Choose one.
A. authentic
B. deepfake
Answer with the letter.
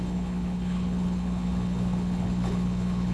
B